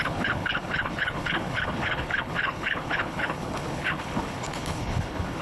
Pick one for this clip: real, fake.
fake